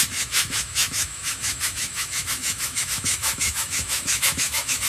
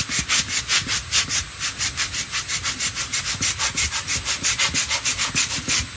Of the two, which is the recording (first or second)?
second